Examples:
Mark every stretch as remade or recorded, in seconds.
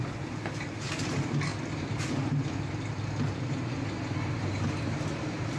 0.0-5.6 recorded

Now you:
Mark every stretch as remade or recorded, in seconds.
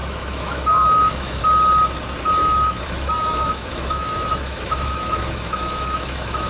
0.0-1.4 remade; 1.4-2.4 recorded; 2.4-6.5 remade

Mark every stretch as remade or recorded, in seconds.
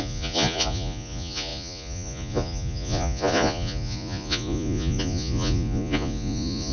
0.0-6.7 remade